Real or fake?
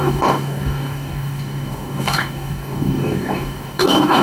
fake